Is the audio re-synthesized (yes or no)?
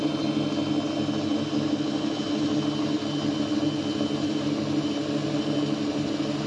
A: no